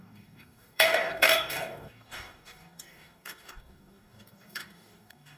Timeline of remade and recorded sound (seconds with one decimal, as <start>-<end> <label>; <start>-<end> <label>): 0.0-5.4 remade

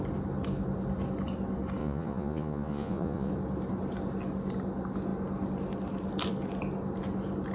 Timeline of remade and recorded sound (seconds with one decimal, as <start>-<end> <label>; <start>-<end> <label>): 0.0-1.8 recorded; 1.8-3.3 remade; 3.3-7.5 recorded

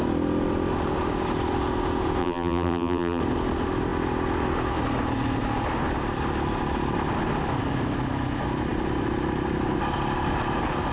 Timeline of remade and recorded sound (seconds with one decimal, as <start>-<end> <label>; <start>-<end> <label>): 0.0-2.2 recorded; 2.2-3.2 remade; 3.2-10.9 recorded

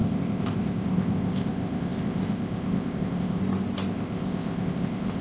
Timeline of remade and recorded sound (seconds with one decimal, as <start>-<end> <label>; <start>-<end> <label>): 0.0-3.4 remade; 3.4-3.9 recorded; 3.9-5.2 remade

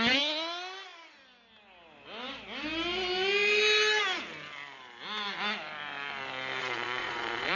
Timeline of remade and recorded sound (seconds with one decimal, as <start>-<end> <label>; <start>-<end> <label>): 0.0-6.6 recorded; 6.6-7.6 remade